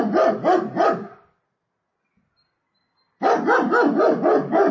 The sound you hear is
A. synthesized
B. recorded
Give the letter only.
B